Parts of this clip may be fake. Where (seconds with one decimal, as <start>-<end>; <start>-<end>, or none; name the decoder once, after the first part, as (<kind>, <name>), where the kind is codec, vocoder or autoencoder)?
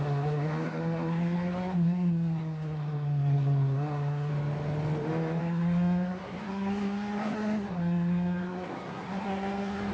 0.0-4.3 (codec, SNAC); 5.4-9.9